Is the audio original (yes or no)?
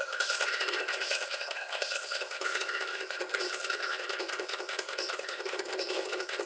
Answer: no